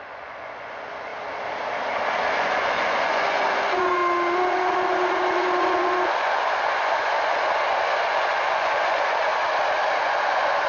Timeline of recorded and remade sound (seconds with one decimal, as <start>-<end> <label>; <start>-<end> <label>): 0.0-1.1 remade; 1.1-2.3 recorded; 2.3-4.0 remade; 4.0-4.5 recorded; 4.5-9.3 remade; 9.3-10.0 recorded; 10.0-10.7 remade